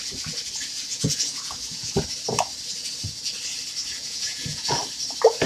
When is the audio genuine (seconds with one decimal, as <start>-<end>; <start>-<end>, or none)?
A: 0.0-0.9; 1.9-4.0; 4.8-5.5